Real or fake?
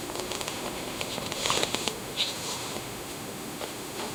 fake